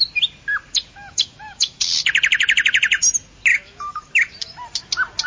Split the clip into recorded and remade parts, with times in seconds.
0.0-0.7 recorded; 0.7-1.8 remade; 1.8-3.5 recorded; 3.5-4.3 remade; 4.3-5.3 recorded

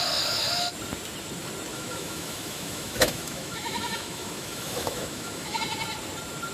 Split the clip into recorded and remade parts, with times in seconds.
0.0-1.7 recorded; 1.7-5.6 remade; 5.6-6.5 recorded